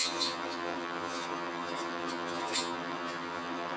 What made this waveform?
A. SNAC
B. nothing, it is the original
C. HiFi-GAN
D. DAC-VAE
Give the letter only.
C